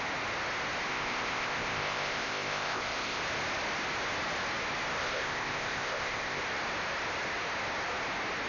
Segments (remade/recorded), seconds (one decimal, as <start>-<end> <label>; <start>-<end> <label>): 0.0-0.9 recorded; 0.9-3.2 remade; 3.2-5.0 recorded; 5.0-6.4 remade; 6.4-8.5 recorded